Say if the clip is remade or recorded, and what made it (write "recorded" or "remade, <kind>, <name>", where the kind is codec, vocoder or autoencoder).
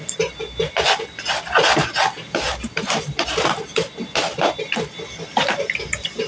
recorded